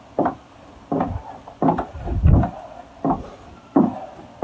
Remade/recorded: recorded